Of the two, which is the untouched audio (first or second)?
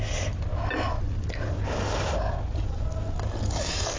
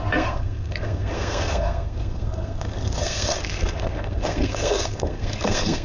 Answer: first